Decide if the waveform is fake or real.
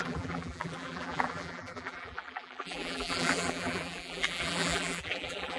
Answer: fake